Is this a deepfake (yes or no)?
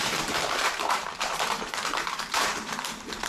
yes